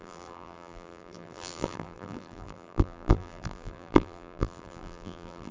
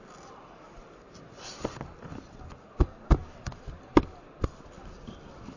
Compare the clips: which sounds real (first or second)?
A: second